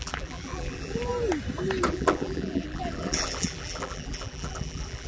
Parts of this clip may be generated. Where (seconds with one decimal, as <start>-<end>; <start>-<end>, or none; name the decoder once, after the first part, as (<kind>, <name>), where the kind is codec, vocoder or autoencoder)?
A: 0.0-1.1 (vocoder, BigVGAN v2); 1.9-5.1